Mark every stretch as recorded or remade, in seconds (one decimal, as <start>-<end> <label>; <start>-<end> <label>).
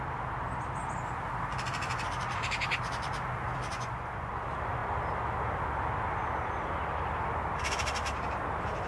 0.0-3.7 recorded; 3.7-4.3 remade; 4.3-8.9 recorded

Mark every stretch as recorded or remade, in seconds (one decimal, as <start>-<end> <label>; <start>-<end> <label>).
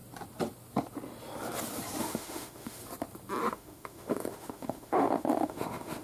0.0-2.0 recorded; 2.0-2.8 remade; 2.8-3.4 recorded; 3.4-6.0 remade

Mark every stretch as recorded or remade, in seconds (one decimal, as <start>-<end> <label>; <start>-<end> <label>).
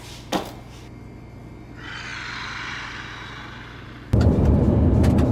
0.0-5.3 recorded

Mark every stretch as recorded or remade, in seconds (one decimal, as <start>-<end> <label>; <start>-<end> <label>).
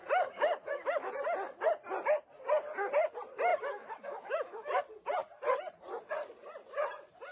0.0-1.1 remade; 1.1-3.5 recorded; 3.5-4.8 remade; 4.8-7.3 recorded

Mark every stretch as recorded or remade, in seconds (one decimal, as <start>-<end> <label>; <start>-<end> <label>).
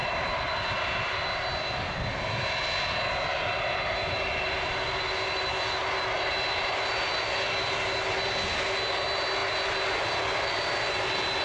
0.0-11.4 recorded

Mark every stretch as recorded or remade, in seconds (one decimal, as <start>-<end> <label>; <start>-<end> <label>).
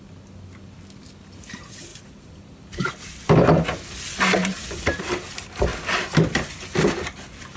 0.0-1.9 recorded; 1.9-2.9 remade; 2.9-4.4 recorded; 4.4-5.0 remade; 5.0-7.6 recorded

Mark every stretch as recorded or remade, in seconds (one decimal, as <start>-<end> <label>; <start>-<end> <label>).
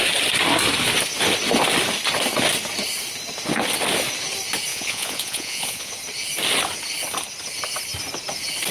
0.0-4.7 recorded; 4.7-5.9 remade; 5.9-8.7 recorded